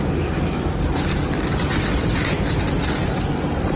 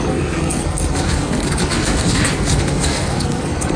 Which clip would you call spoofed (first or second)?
second